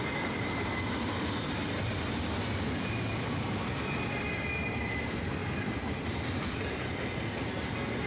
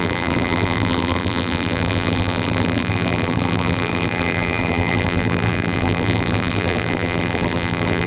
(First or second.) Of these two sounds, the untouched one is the first